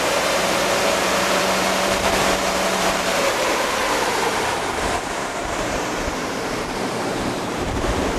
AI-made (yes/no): yes